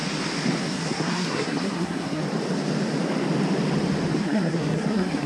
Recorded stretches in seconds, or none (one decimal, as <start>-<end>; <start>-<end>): 0.0-0.6; 2.2-4.1